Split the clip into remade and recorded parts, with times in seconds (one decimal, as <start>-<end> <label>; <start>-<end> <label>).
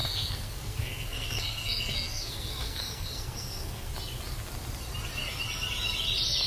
0.0-3.9 remade; 3.9-6.5 recorded